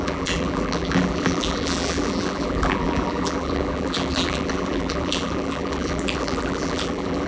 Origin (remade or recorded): remade